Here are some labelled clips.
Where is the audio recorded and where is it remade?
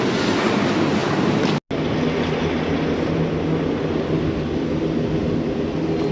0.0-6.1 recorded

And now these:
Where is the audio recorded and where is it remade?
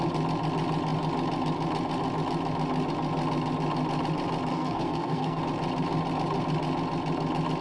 0.0-4.5 recorded; 4.5-5.4 remade; 5.4-7.6 recorded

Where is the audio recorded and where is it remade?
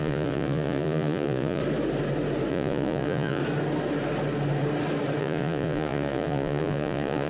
0.0-1.6 remade; 1.6-2.5 recorded; 2.5-3.4 remade; 3.4-5.2 recorded; 5.2-7.3 remade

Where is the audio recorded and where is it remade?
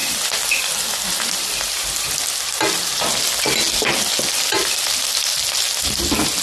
0.0-6.4 recorded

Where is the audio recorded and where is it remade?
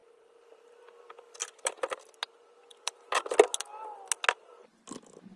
0.0-3.2 remade; 3.2-5.4 recorded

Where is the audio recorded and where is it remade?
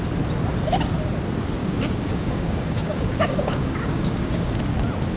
0.0-1.6 recorded; 1.6-4.6 remade; 4.6-5.2 recorded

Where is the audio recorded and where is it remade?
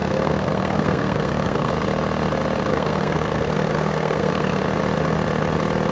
0.0-1.7 remade; 1.7-2.7 recorded; 2.7-4.6 remade; 4.6-5.9 recorded